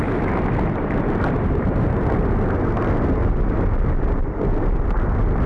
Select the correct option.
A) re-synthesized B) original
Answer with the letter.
B